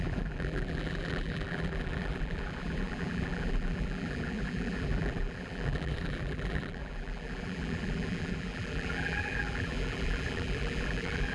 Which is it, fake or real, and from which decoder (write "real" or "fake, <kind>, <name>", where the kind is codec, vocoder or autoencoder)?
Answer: fake, vocoder, BigVGAN v2